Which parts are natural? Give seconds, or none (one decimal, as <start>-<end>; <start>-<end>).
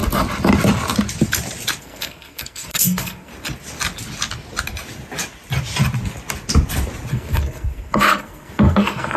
0.0-1.8; 3.3-7.1